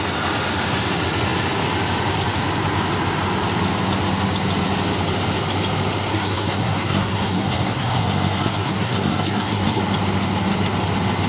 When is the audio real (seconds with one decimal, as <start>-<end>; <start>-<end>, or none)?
0.0-6.1; 9.8-11.3